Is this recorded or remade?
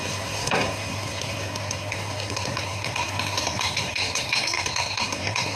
remade